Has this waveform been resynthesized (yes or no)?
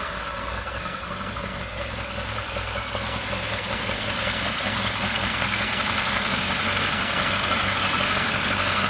yes